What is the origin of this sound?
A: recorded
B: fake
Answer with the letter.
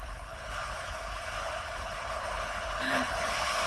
B